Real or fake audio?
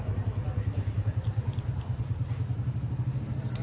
real